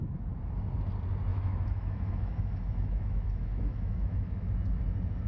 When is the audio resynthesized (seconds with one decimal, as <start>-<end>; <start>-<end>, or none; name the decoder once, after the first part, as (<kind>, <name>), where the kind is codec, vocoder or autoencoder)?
1.3-4.5 (autoencoder, DAC-VAE)